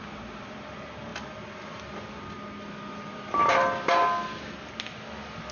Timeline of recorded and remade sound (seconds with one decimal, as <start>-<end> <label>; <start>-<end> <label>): 0.0-5.5 recorded